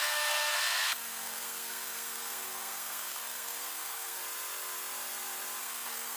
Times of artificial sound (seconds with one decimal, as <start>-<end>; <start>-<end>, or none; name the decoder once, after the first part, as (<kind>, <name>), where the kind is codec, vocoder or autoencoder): 0.0-4.2 (codec, SNAC); 5.6-6.2